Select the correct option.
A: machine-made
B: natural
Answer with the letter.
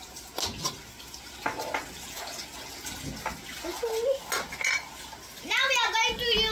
B